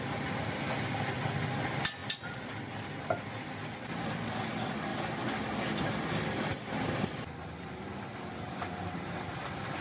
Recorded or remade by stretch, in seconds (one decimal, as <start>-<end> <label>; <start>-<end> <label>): 0.0-9.8 recorded

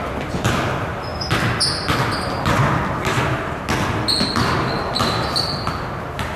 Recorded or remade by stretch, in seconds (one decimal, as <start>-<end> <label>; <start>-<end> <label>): 0.0-6.4 recorded

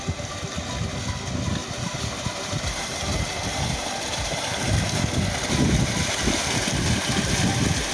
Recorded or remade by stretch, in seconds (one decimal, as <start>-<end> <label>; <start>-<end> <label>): 0.0-1.6 recorded; 1.6-5.0 remade; 5.0-7.9 recorded

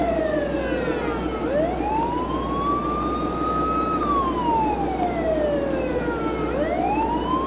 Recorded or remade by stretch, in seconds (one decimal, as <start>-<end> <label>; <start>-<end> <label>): 0.0-7.5 recorded

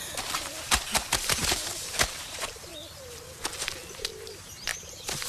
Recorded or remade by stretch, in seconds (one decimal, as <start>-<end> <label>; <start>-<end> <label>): 0.0-2.7 remade; 2.7-4.1 recorded; 4.1-4.7 remade; 4.7-5.3 recorded

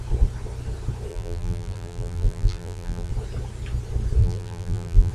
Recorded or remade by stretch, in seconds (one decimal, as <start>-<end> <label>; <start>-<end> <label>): 0.0-1.1 recorded; 1.1-3.1 remade; 3.1-4.2 recorded; 4.2-5.1 remade

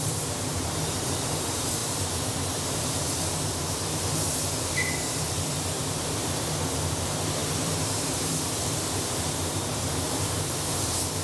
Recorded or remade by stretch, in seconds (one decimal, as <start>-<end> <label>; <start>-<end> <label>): 0.0-11.2 remade

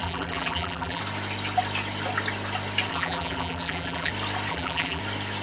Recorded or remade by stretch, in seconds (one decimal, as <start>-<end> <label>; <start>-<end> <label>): 0.0-1.0 remade; 1.0-2.9 recorded; 2.9-4.1 remade; 4.1-4.5 recorded; 4.5-5.0 remade; 5.0-5.4 recorded